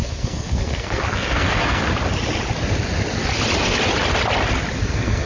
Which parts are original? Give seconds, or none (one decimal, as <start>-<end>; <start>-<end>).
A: 1.8-4.8